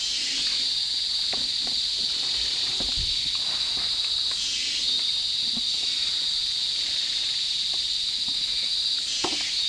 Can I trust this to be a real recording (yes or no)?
yes